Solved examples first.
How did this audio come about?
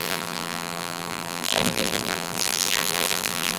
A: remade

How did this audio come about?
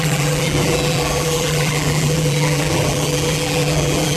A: remade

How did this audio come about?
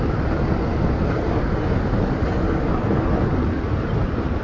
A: recorded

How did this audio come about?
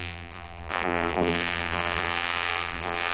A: remade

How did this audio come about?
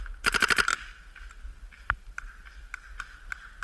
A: recorded